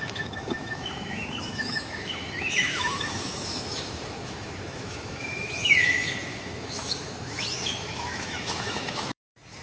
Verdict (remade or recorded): remade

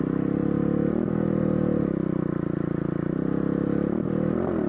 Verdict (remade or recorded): recorded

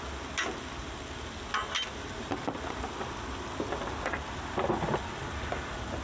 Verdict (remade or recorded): recorded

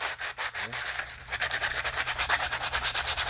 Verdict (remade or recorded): remade